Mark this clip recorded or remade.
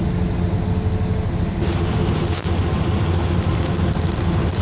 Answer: recorded